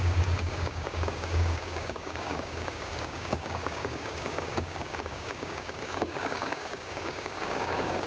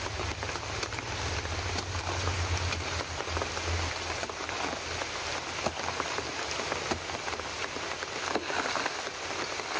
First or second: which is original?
second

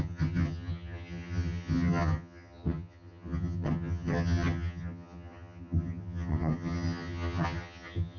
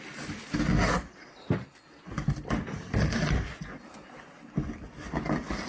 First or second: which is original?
second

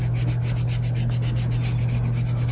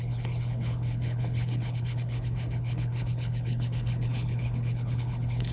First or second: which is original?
first